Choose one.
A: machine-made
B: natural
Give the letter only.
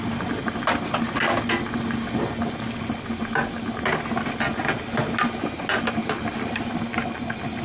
B